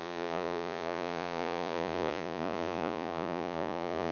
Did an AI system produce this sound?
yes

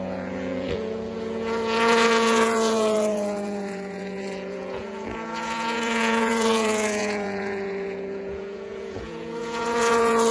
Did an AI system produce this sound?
yes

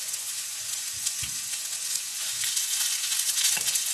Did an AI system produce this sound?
yes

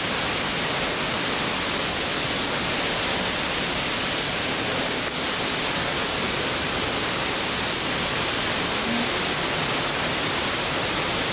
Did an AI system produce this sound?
no